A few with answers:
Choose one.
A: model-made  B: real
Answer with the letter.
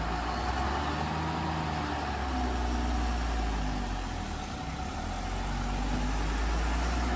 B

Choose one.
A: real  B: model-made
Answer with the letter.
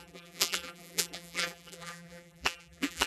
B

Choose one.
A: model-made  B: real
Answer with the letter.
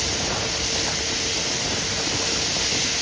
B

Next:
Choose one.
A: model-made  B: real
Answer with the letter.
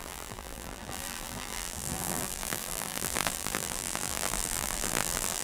A